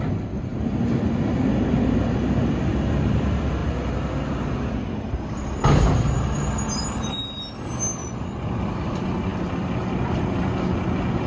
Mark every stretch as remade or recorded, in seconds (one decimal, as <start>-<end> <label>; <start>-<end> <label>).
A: 0.0-8.0 recorded; 8.0-8.6 remade; 8.6-11.3 recorded